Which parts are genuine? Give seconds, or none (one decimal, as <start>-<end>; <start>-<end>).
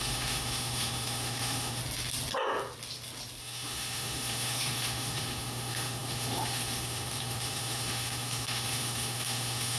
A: 1.8-3.4